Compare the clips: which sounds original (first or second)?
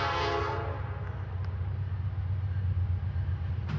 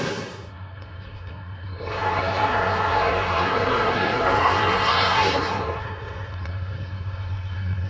first